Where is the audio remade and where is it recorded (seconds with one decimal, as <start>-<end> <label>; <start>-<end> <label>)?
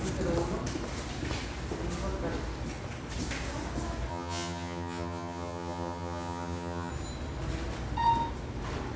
0.0-4.1 recorded; 4.1-6.9 remade; 6.9-9.0 recorded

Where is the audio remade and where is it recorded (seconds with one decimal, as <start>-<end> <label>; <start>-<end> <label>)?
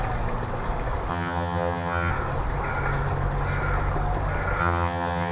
0.0-1.1 recorded; 1.1-2.1 remade; 2.1-4.6 recorded; 4.6-5.3 remade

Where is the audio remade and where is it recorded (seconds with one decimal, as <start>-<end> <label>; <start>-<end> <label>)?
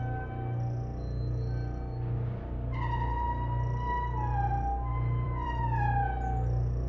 0.0-4.9 recorded; 4.9-5.6 remade; 5.6-6.9 recorded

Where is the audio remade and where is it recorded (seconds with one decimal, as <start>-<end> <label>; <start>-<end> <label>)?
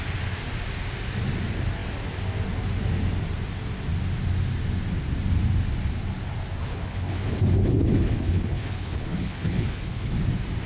0.0-6.6 recorded; 6.6-7.3 remade; 7.3-7.7 recorded; 7.7-10.1 remade; 10.1-10.7 recorded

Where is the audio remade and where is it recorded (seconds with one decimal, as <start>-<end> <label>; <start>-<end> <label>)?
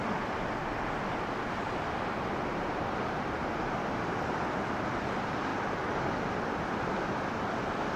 0.0-8.0 recorded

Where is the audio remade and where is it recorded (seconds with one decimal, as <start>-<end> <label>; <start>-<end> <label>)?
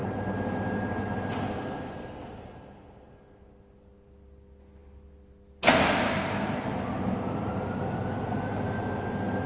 0.0-9.5 recorded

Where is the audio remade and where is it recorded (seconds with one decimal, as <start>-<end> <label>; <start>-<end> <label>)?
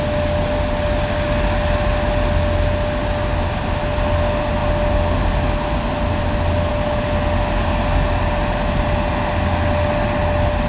0.0-10.7 recorded